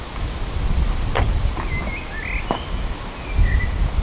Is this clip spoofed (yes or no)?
no